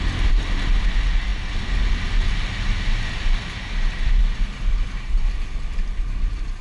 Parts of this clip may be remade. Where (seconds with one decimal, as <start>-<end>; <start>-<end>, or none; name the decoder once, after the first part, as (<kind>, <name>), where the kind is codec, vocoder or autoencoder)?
none